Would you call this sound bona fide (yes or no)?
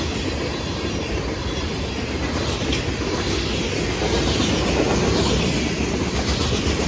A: yes